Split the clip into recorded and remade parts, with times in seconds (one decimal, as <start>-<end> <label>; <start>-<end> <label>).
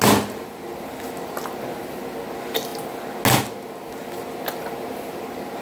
0.0-5.6 recorded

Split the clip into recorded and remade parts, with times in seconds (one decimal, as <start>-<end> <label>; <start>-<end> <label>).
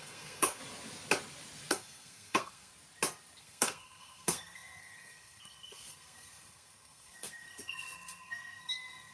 0.0-0.6 remade; 0.6-1.7 recorded; 1.7-2.7 remade; 2.7-3.4 recorded; 3.4-9.1 remade